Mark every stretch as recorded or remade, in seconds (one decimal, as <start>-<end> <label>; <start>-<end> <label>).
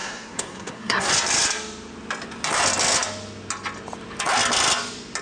0.0-1.1 remade; 1.1-5.2 recorded